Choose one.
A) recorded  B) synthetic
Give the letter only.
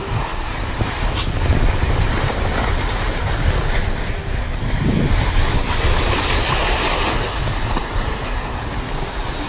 A